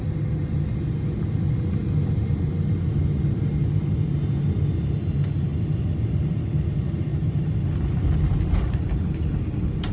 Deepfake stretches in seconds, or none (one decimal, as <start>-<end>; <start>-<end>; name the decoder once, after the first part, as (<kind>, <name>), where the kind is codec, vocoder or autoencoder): none